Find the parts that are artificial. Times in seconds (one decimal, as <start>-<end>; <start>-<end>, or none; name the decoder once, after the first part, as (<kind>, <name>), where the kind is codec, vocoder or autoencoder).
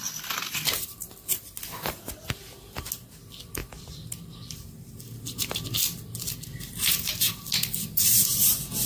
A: 1.3-1.9 (vocoder, BigVGAN v2); 3.6-5.5